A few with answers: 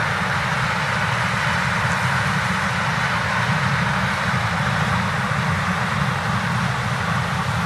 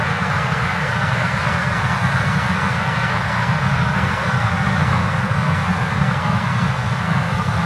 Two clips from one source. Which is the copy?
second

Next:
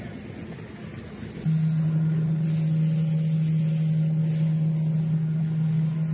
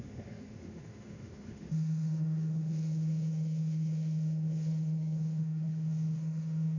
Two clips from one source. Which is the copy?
second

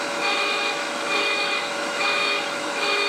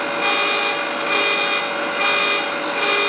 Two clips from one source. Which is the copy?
first